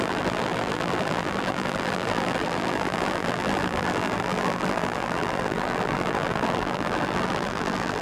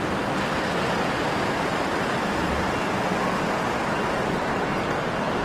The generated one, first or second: first